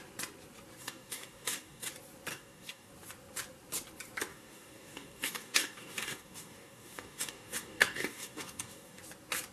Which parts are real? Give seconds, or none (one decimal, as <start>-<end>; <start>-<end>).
0.0-0.8; 1.9-2.3; 2.9-4.3; 9.0-9.5